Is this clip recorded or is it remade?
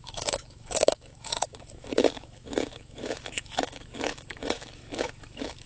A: remade